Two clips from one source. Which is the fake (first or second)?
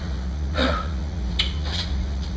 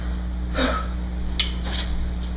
first